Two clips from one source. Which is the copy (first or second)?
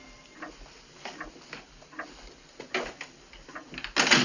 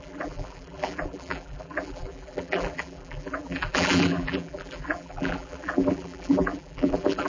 second